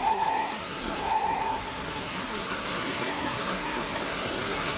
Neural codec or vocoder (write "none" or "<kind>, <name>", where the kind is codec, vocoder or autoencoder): codec, SNAC